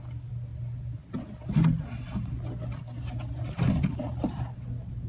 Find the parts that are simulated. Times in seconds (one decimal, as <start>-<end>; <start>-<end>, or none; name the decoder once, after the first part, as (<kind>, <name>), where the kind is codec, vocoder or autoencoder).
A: none